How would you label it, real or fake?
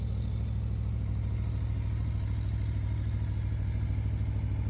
real